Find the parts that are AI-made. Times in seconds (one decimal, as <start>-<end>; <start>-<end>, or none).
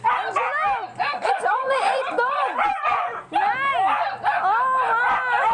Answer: 0.9-3.2